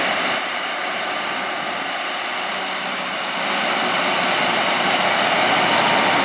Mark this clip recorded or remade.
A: remade